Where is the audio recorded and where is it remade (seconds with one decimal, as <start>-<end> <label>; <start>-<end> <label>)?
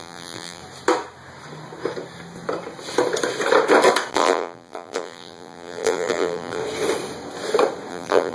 0.0-0.6 remade; 0.6-4.1 recorded; 4.1-6.6 remade; 6.6-7.9 recorded; 7.9-8.3 remade